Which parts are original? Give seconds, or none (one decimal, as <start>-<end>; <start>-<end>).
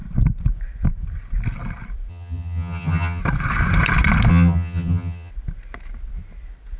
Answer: 0.0-2.1; 3.2-4.3; 5.3-6.8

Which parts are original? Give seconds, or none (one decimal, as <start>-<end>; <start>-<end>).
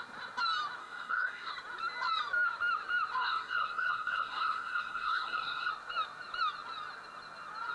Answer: 0.0-0.8; 1.5-3.2; 5.7-7.7